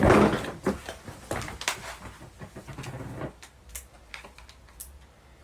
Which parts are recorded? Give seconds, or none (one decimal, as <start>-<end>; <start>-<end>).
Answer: 0.0-5.4

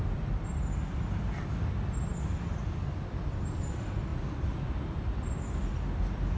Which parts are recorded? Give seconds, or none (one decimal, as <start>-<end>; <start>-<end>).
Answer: 0.0-6.4